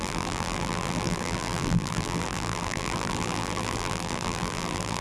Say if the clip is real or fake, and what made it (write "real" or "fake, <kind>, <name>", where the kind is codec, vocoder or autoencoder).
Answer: fake, vocoder, BigVGAN v2